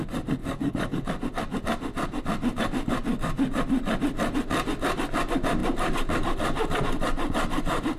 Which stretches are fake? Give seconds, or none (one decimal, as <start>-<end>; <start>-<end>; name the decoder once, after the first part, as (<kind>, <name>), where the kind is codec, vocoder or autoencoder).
0.4-1.1 (codec, DAC)

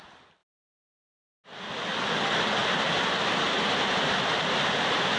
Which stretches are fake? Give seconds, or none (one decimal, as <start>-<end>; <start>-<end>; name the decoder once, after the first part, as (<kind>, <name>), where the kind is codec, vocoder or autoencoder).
0.4-1.8 (vocoder, BigVGAN v2); 2.6-5.2

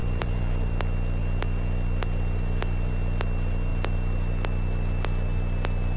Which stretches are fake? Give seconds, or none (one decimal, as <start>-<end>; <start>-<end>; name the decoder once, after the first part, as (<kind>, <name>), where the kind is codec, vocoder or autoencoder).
0.0-0.7 (vocoder, BigVGAN v2)

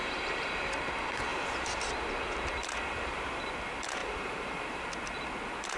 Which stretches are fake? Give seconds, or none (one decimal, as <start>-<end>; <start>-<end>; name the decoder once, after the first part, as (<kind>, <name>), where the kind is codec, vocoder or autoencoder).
0.0-0.7 (vocoder, BigVGAN v2); 1.3-1.8; 4.0-4.9

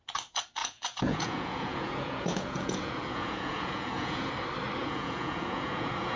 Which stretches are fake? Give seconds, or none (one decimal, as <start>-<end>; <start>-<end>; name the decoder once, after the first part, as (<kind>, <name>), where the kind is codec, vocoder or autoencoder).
0.6-4.3 (vocoder, Vocos); 4.8-6.2

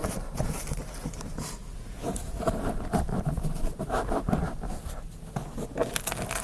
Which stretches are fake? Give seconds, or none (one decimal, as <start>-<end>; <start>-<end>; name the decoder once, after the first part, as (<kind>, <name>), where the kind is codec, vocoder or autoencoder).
0.0-2.6 (vocoder, BigVGAN v2); 3.1-3.8

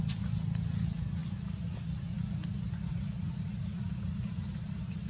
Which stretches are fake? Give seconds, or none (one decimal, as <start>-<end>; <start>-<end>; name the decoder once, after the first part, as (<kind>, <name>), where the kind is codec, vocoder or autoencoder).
none